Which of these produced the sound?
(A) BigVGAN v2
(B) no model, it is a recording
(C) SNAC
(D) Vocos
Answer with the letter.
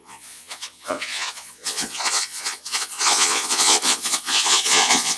D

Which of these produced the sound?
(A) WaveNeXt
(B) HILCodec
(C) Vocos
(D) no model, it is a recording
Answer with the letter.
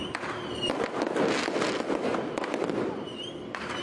D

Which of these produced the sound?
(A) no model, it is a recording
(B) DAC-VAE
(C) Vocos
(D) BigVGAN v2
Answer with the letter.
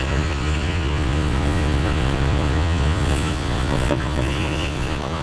C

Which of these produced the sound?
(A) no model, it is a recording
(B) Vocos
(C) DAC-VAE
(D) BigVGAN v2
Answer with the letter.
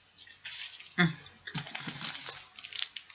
A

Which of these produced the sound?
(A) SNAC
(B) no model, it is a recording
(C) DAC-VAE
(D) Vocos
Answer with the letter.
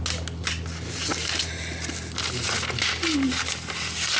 B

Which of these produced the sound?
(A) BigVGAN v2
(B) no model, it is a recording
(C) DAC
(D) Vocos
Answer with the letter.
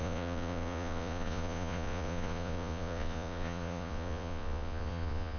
D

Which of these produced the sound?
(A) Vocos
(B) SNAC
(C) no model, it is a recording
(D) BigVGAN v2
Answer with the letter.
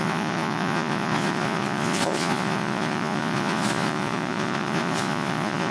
A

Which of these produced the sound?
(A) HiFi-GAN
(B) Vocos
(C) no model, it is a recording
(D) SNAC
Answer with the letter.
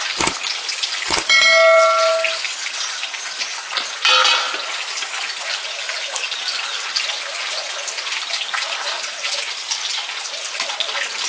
C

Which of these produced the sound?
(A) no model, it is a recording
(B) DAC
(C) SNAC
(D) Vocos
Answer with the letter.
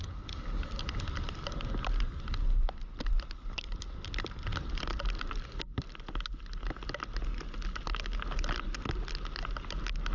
A